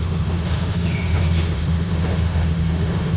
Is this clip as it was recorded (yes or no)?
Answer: no